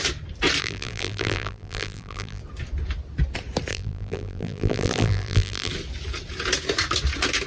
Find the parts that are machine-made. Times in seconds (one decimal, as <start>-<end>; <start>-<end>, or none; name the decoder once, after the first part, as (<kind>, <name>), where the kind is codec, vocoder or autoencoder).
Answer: 0.6-2.4 (vocoder, BigVGAN v2); 3.7-5.7